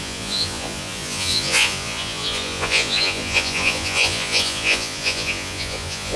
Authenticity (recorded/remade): remade